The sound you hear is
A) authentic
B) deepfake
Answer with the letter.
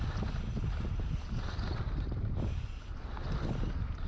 A